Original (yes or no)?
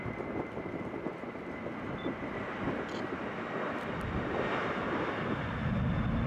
yes